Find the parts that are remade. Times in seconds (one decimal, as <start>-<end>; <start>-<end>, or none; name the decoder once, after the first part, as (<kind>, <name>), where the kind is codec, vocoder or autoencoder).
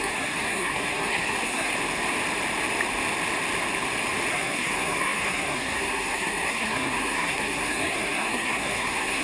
0.0-1.7 (codec, SNAC); 4.3-9.2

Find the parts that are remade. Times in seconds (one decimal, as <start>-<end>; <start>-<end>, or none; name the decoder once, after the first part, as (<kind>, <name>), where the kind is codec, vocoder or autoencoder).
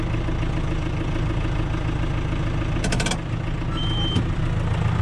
3.8-4.4 (vocoder, BigVGAN v2)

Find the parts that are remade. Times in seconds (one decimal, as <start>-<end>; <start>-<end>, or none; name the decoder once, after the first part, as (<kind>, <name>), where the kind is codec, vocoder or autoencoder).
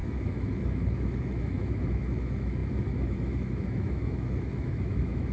0.0-5.3 (autoencoder, DAC-VAE)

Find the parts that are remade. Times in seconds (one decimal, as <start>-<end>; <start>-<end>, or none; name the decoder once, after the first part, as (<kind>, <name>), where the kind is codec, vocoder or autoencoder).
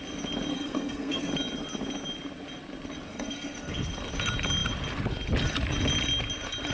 0.5-1.3 (codec, SNAC); 3.1-3.9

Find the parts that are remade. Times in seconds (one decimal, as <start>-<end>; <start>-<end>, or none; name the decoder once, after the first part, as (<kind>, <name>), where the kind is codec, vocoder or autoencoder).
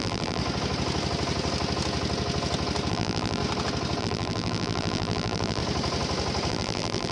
0.0-0.4 (vocoder, BigVGAN v2); 2.9-3.4; 4.0-5.6; 6.5-7.1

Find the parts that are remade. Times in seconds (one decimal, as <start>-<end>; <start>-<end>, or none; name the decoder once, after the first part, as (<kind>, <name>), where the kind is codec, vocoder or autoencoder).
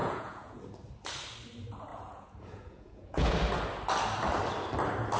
0.0-0.6 (vocoder, Vocos); 1.9-3.3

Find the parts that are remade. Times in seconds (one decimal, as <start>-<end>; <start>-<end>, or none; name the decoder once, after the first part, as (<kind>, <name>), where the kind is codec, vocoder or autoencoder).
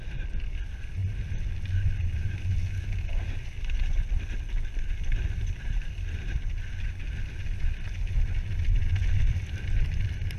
none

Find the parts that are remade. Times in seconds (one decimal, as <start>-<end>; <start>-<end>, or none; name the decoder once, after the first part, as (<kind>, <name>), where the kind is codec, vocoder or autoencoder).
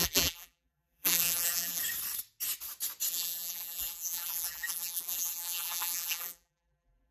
0.0-1.8 (vocoder, BigVGAN v2); 3.1-7.1